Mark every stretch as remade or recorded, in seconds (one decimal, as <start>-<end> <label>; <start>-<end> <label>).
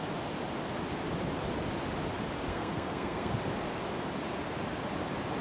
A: 0.0-2.5 recorded; 2.5-3.3 remade; 3.3-5.4 recorded